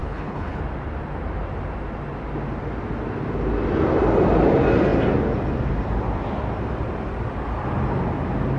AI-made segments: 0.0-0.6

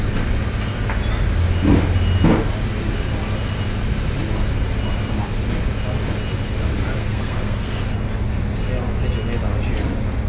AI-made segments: 7.0-7.8

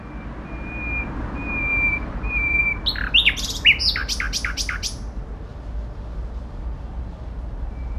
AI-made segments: 1.7-2.6

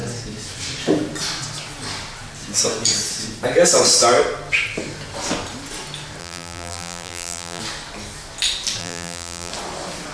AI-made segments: 6.2-7.6; 8.8-9.5

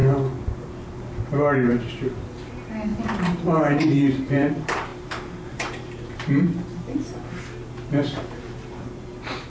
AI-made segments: 1.7-9.5

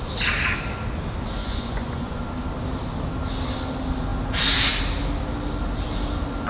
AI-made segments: 1.4-2.2